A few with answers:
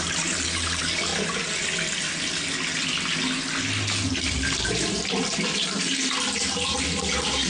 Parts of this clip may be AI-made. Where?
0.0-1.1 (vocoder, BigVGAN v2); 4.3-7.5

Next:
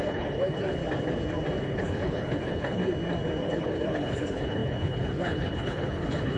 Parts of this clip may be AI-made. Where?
0.0-0.8 (codec, HILCodec); 1.6-2.8; 3.4-6.4

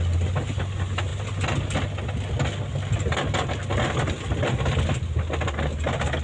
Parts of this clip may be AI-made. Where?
none

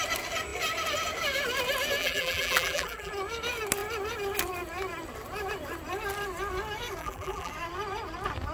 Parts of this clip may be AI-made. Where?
2.0-3.1 (vocoder, BigVGAN v2); 7.0-7.5

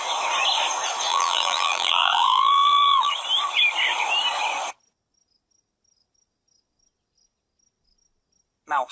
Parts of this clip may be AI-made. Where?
1.1-3.1 (vocoder, BigVGAN v2)